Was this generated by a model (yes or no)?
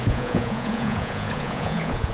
yes